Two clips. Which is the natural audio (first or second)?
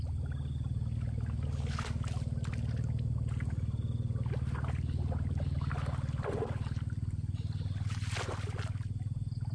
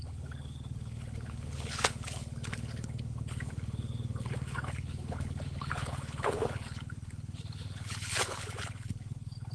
first